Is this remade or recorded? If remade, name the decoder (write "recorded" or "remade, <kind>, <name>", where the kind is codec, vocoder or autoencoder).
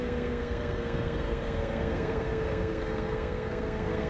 remade, codec, SNAC